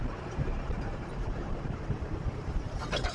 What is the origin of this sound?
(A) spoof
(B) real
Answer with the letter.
A